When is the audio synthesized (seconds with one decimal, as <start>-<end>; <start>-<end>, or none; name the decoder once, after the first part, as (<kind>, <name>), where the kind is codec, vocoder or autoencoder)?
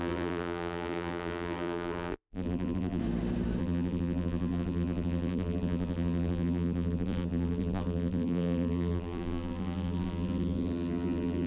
0.0-3.0 (vocoder, BigVGAN v2); 3.6-11.5